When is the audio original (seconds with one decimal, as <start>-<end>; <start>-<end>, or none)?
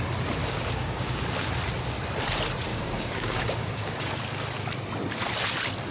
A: 0.0-0.4; 1.2-2.7; 4.1-5.9